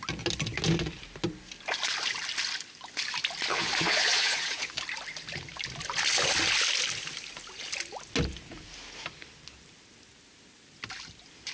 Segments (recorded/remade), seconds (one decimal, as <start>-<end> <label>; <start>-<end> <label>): 0.0-3.5 recorded; 3.5-4.7 remade; 4.7-11.5 recorded